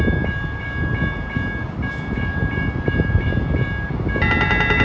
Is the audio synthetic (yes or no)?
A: no